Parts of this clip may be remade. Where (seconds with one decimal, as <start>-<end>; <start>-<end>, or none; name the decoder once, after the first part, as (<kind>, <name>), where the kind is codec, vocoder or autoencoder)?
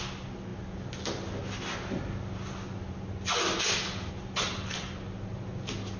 none